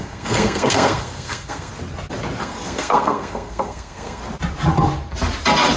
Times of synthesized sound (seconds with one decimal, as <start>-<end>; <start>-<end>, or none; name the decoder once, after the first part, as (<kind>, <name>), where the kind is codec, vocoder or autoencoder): 0.0-1.7 (codec, SNAC); 2.4-4.2